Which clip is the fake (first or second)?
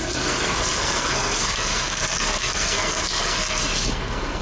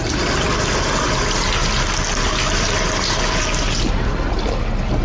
first